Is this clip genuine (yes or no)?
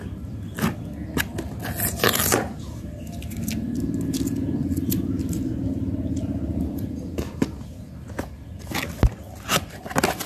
yes